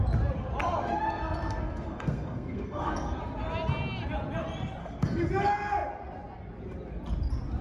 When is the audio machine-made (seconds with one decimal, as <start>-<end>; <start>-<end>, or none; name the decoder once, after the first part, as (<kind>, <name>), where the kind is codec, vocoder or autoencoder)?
0.6-3.2 (codec, SNAC); 4.8-5.3

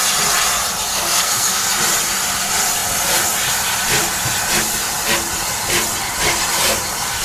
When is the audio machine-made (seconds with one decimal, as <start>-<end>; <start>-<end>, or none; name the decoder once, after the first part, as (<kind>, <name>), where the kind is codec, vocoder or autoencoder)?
0.9-1.7 (codec, SNAC)

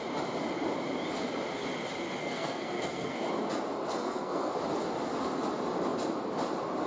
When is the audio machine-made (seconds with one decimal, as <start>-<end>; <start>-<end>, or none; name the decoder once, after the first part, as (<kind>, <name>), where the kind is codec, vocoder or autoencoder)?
2.2-3.3 (codec, SNAC); 3.9-4.6

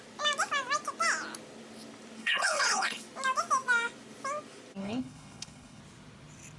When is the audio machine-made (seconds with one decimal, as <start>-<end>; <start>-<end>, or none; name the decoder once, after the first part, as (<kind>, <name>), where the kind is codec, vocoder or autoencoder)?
2.2-3.0 (codec, HILCodec); 4.8-5.8

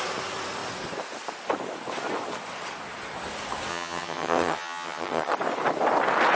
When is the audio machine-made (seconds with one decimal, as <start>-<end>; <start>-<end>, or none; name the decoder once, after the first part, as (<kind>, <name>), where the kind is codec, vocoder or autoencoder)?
3.7-5.3 (vocoder, HiFi-GAN)

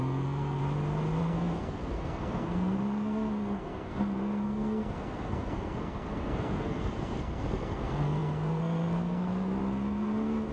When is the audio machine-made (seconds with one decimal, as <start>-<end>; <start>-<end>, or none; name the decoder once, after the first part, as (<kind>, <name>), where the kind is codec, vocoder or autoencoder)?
0.0-0.6 (codec, SNAC); 1.2-10.5

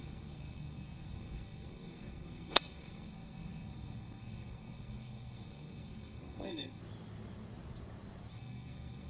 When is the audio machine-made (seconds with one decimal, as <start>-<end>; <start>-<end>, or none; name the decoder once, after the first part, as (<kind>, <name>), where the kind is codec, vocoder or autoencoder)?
0.0-6.8 (codec, SNAC); 8.3-9.1